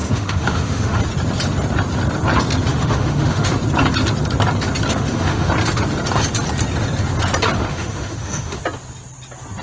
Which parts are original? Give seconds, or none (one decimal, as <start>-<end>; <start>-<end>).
1.0-2.7; 3.5-4.9; 5.5-7.6; 8.6-9.6